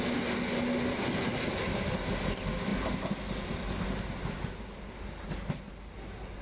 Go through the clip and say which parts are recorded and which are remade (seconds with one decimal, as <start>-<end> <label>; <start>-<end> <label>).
0.0-6.4 recorded